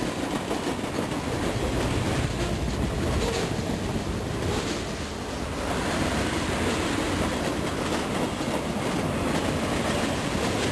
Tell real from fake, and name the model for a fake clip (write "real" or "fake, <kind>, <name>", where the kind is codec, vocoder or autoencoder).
real